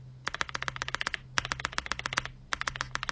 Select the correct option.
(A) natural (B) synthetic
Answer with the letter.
A